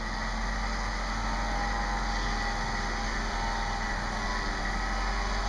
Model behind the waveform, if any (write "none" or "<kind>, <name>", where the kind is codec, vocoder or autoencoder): none